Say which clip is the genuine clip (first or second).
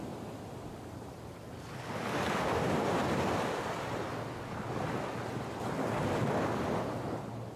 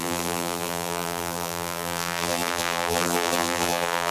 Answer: first